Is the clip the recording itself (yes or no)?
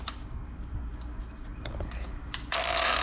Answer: yes